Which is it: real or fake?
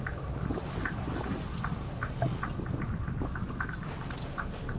real